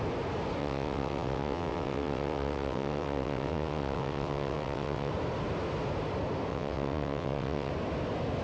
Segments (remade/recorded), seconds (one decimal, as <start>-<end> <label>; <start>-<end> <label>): 0.0-0.6 recorded; 0.6-5.1 remade; 5.1-6.5 recorded; 6.5-7.7 remade; 7.7-8.4 recorded